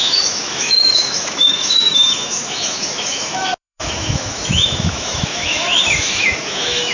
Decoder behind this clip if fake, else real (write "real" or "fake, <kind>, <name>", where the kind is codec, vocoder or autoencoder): fake, autoencoder, DAC-VAE